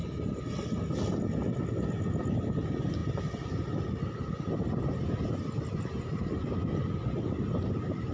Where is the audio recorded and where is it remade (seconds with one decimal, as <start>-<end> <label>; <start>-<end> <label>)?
0.0-8.1 recorded